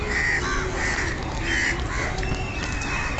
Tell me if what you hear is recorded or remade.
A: recorded